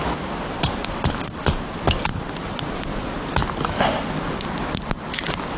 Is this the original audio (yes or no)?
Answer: yes